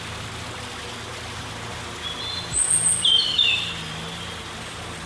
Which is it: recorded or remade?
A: recorded